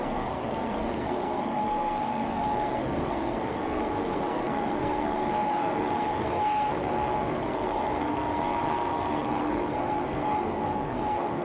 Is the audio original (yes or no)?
no